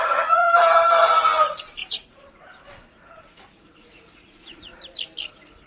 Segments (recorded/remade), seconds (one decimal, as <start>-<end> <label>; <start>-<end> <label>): 0.0-0.5 remade; 0.5-1.0 recorded; 1.0-4.7 remade; 4.7-5.3 recorded; 5.3-5.7 remade